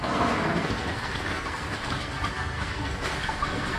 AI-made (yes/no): yes